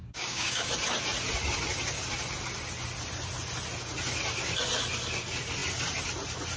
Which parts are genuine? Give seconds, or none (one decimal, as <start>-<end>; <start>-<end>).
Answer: 0.7-6.6